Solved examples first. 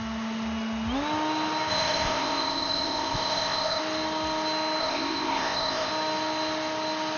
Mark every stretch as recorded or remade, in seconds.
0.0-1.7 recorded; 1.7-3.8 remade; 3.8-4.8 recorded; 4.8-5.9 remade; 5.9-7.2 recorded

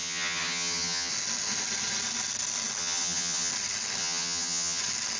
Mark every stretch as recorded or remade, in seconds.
0.0-1.1 remade; 1.1-2.8 recorded; 2.8-3.5 remade; 3.5-4.0 recorded; 4.0-4.8 remade; 4.8-5.2 recorded